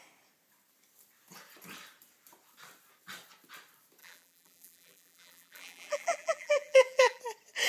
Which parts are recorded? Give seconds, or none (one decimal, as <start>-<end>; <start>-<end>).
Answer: 0.0-4.0; 7.2-7.7

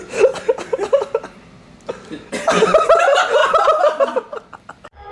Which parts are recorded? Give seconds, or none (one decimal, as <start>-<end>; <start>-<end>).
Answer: 0.0-3.4